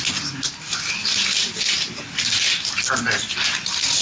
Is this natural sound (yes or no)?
yes